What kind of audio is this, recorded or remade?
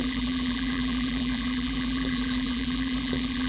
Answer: remade